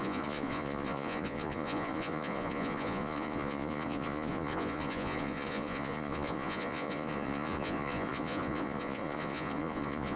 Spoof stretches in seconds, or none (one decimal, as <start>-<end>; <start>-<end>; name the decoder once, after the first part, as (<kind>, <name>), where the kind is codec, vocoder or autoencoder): 0.0-10.2 (vocoder, Vocos)